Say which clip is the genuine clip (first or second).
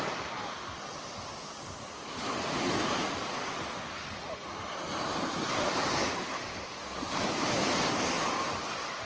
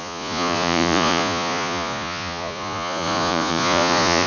first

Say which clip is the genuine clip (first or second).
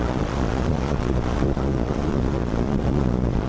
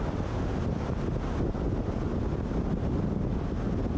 second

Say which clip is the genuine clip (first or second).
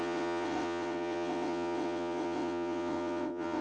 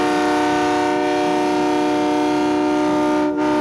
second